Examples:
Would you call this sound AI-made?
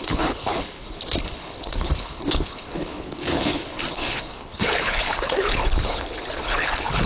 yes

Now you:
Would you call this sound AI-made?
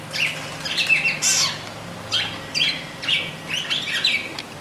no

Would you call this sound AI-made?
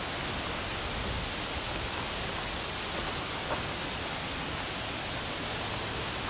no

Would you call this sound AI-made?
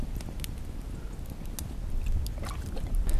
no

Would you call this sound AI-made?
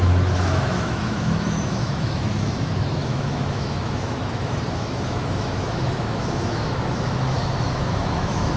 yes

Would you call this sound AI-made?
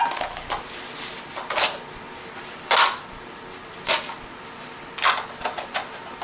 no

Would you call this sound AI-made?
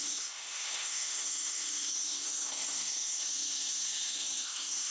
yes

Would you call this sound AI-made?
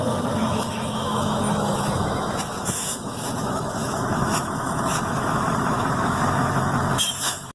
yes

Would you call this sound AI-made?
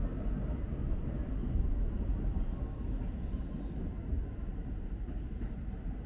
no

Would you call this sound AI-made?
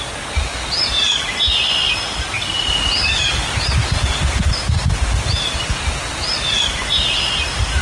no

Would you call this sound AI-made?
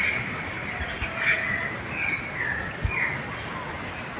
no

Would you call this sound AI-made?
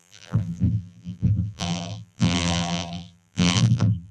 yes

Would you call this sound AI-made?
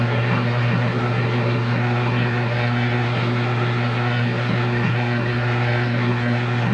yes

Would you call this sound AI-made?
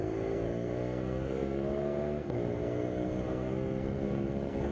yes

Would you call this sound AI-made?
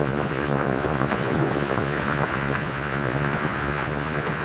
yes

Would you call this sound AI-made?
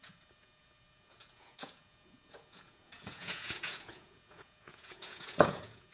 yes